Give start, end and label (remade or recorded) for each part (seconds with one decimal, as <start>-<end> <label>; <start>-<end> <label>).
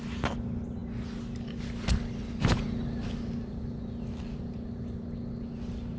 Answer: 0.0-6.0 recorded